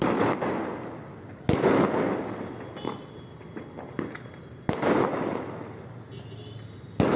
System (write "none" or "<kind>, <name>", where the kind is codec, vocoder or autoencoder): none